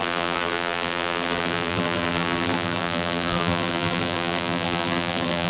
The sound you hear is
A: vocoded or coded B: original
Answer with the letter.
A